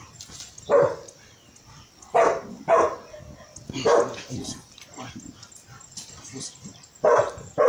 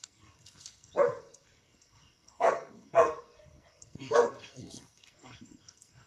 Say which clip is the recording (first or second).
first